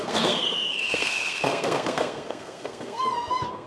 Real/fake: fake